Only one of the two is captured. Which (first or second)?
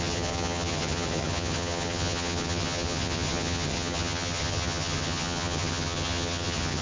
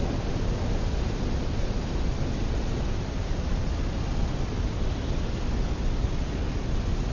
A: second